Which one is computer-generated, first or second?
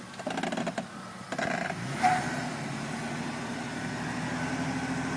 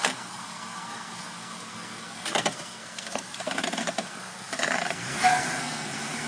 second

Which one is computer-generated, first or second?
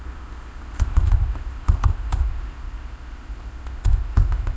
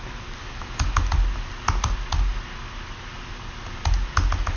first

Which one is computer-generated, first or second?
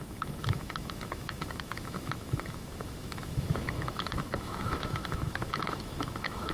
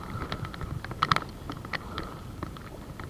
first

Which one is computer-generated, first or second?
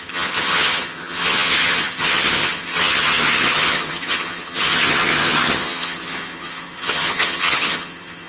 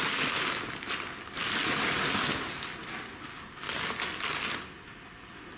first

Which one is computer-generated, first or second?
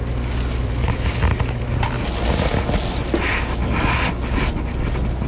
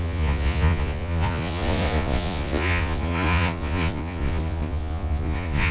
second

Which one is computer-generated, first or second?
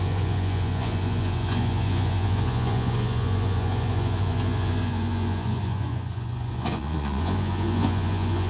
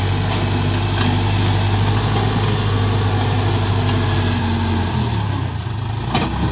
first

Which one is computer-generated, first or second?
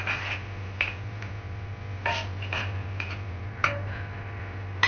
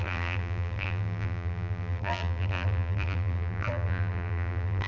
second